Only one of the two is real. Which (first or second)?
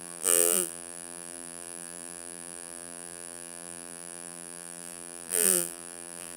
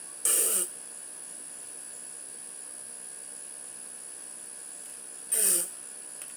second